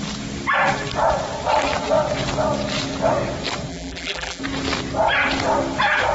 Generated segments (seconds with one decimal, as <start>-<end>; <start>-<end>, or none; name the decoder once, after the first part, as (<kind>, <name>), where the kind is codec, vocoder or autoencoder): 3.7-4.4 (vocoder, BigVGAN v2)